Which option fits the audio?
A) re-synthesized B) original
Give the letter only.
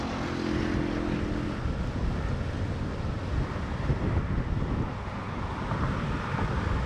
B